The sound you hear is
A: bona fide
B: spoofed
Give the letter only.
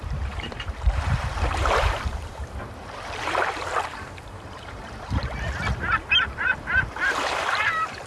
B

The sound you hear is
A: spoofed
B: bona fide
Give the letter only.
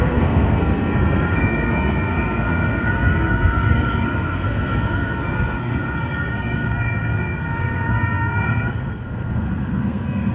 A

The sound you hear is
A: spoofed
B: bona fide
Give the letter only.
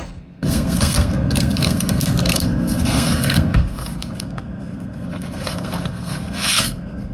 A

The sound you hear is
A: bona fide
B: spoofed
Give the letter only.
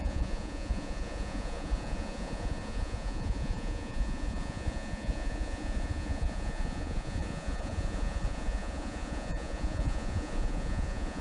B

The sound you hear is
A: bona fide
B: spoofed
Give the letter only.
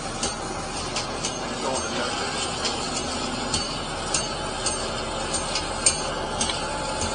A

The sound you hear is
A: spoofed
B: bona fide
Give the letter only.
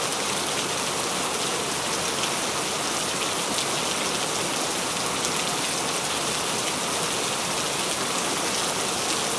B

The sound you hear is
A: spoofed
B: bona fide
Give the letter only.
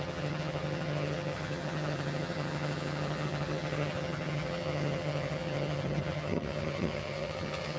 A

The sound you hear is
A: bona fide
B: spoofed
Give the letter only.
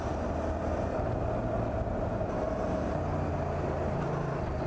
A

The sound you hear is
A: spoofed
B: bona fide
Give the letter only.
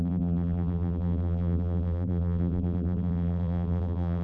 A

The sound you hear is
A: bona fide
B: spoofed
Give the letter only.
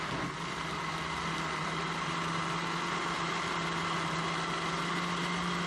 A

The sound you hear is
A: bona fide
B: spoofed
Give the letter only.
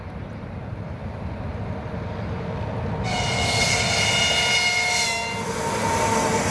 A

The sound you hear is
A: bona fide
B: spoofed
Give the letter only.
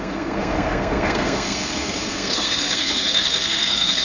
B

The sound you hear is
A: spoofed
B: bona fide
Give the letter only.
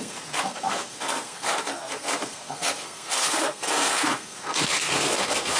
A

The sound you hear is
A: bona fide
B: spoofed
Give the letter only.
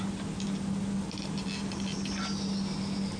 A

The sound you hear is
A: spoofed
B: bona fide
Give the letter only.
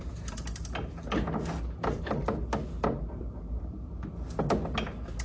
B